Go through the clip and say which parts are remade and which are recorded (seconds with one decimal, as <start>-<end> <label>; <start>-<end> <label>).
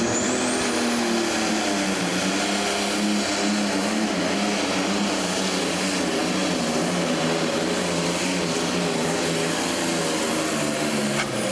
0.0-11.5 recorded